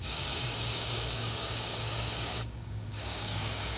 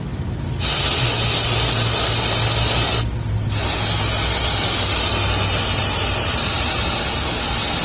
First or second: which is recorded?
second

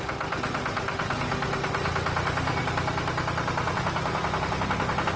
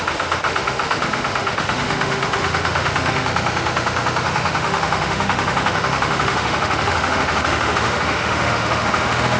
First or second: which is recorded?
first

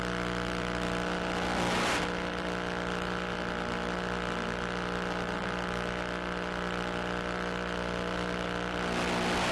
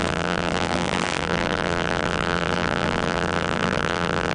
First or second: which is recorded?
first